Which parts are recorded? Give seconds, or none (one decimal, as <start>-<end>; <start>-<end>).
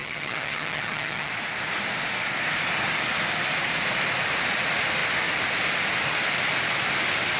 1.3-7.4